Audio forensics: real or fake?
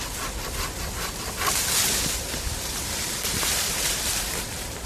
real